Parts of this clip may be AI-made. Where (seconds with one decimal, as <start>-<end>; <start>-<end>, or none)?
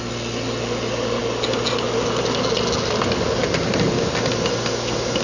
none